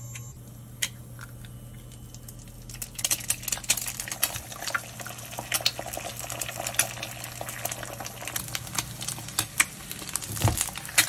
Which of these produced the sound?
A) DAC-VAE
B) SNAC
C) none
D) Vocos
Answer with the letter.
C